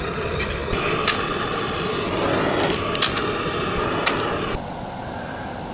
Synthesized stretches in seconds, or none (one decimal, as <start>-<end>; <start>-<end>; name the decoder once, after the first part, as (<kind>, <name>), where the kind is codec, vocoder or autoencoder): none